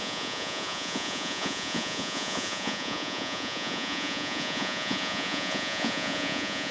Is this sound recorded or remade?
remade